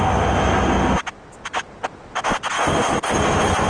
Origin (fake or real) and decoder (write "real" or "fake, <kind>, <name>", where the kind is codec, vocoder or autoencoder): real